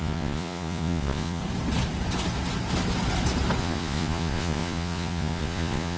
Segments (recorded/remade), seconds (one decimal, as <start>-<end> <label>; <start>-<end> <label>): 0.0-1.4 remade; 1.4-3.6 recorded; 3.6-6.0 remade

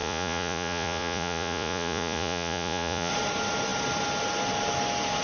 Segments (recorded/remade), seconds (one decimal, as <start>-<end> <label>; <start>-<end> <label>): 0.0-3.1 remade; 3.1-5.2 recorded